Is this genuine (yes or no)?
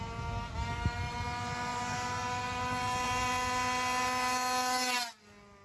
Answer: yes